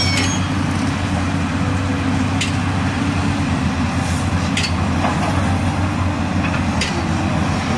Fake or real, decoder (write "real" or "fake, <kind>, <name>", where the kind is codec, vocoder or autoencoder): real